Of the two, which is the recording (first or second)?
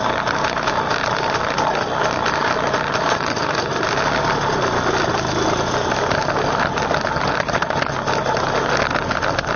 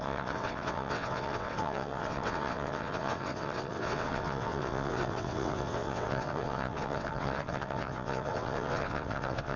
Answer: first